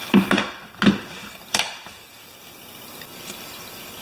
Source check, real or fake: real